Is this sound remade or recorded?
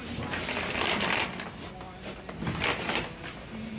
recorded